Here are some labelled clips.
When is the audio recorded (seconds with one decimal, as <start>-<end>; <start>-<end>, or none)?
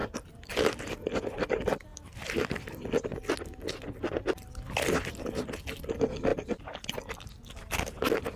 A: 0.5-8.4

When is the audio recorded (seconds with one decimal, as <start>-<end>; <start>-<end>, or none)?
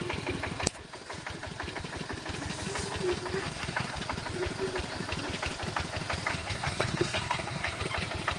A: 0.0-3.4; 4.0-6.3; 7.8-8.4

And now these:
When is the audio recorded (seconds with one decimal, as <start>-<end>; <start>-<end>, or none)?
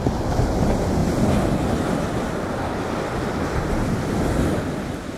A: 0.0-5.2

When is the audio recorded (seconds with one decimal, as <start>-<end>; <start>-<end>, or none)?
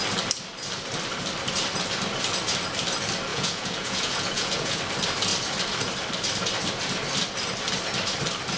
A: 0.0-3.3; 4.8-8.6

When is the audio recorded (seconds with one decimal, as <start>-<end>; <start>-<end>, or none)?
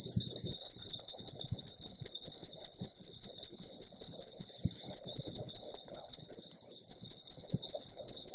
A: 0.0-0.5; 4.5-4.9; 6.4-6.9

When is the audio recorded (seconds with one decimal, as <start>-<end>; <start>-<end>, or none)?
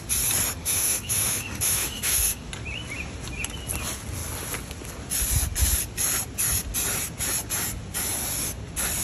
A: 0.0-0.6; 2.5-9.0